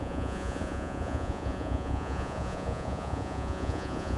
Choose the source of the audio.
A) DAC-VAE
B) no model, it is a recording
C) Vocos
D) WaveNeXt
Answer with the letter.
C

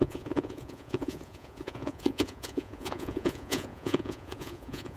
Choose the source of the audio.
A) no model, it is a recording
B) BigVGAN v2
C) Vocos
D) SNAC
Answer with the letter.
C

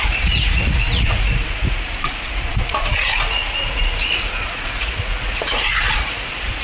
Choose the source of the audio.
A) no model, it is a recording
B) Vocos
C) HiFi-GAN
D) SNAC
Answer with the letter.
B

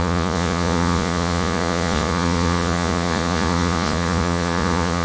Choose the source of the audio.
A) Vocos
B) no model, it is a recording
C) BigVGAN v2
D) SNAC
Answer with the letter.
A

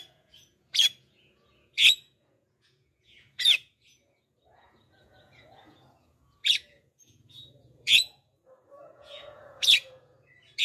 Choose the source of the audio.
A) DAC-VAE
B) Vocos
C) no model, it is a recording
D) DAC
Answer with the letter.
B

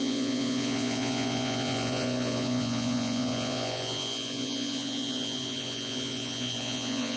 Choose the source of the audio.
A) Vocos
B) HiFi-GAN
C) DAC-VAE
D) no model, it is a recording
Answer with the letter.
A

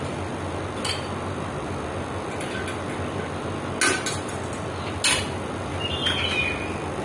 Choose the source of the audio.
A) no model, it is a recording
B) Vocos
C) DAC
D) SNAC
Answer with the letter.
A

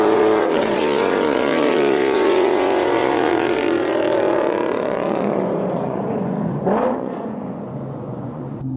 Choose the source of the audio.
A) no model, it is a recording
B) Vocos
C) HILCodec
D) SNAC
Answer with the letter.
B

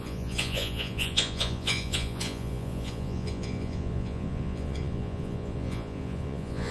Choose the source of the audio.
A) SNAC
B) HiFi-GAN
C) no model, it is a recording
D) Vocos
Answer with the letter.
D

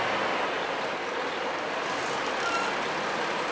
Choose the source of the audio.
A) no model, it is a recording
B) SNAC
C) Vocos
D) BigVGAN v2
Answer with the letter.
A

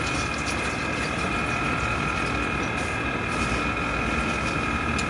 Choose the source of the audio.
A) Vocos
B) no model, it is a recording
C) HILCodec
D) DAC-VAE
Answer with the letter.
B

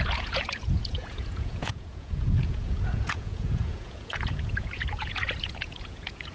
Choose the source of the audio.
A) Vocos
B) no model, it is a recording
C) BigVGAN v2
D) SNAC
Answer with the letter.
A